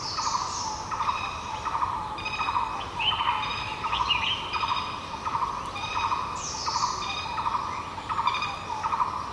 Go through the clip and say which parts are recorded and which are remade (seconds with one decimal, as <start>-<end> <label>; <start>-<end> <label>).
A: 0.0-3.5 recorded; 3.5-4.1 remade; 4.1-9.3 recorded